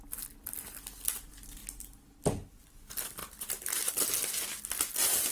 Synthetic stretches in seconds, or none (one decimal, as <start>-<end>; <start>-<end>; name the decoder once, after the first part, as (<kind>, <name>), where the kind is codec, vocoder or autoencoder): none